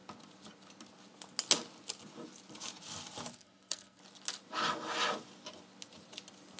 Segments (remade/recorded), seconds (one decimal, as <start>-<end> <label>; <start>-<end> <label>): 0.0-3.3 recorded; 3.3-4.0 remade; 4.0-6.6 recorded

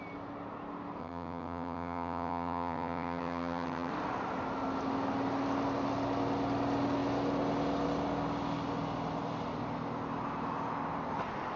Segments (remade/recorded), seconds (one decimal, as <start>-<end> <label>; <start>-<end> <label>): 0.0-1.0 recorded; 1.0-3.9 remade; 3.9-11.6 recorded